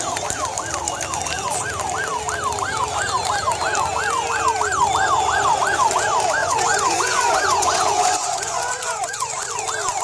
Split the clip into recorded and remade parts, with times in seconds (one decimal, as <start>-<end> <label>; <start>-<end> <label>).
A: 0.0-6.4 recorded; 6.4-9.5 remade; 9.5-10.0 recorded